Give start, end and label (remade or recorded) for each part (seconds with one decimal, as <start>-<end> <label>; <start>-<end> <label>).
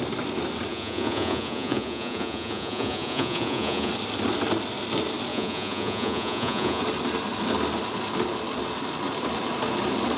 0.0-0.7 recorded; 0.7-3.9 remade; 3.9-5.3 recorded; 5.3-6.8 remade; 6.8-10.2 recorded